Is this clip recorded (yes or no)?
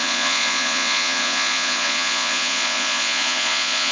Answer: no